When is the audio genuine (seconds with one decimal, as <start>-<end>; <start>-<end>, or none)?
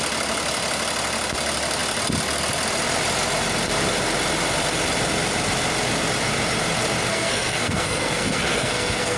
0.0-7.1